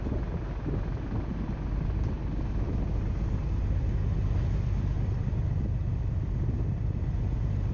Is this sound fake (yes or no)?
no